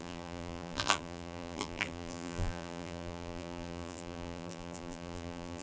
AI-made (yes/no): yes